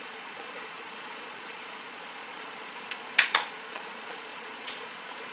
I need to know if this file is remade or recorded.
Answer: remade